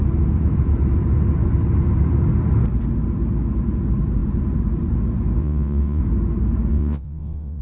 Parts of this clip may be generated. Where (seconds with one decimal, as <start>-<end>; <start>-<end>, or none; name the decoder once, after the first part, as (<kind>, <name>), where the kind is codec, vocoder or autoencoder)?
5.4-6.0 (vocoder, WaveNeXt); 6.7-7.6